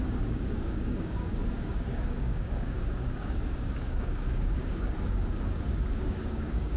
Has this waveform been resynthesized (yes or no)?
yes